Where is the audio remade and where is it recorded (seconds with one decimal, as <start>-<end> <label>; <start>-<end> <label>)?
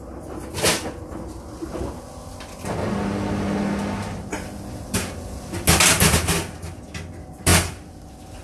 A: 0.0-8.4 recorded